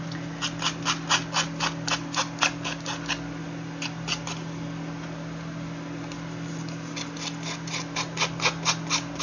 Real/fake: real